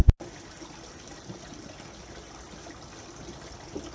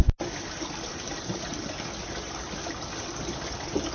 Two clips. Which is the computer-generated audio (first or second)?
second